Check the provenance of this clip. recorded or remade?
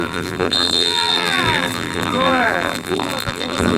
remade